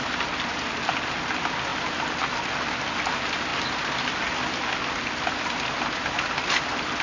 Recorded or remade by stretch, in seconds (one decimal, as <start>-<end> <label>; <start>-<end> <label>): 0.0-7.0 recorded